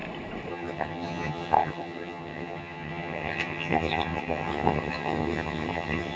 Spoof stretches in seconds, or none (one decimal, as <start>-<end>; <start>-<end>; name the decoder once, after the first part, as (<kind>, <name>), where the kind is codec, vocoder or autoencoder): 0.5-6.2 (vocoder, HiFi-GAN)